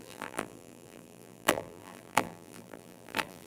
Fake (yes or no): yes